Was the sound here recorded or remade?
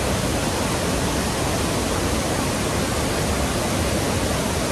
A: recorded